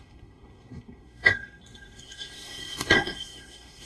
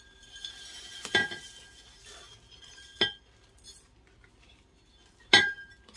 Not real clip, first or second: first